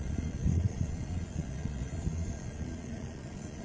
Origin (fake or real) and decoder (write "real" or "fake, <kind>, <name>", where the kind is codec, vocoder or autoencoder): fake, vocoder, Vocos